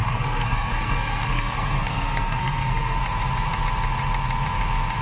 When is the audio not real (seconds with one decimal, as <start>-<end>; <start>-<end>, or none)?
0.0-3.0